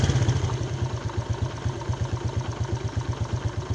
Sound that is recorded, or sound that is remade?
recorded